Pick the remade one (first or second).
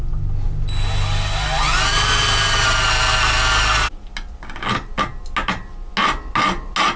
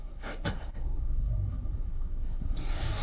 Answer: second